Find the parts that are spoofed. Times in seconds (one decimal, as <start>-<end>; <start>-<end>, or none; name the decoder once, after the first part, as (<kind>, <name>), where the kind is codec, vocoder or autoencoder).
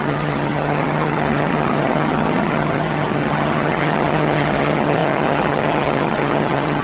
0.0-6.8 (vocoder, HiFi-GAN)